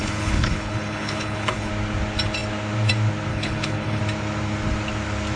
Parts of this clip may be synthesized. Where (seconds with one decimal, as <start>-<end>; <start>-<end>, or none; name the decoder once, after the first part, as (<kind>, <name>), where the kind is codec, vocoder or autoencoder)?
0.0-1.7 (codec, HILCodec); 3.3-4.0